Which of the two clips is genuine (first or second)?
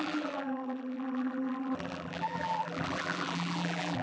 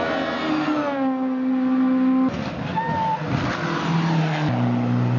second